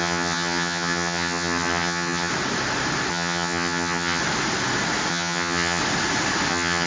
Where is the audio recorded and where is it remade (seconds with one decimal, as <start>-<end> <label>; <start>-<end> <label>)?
0.0-2.3 remade; 2.3-3.1 recorded; 3.1-4.2 remade; 4.2-5.1 recorded; 5.1-5.8 remade; 5.8-6.5 recorded; 6.5-6.9 remade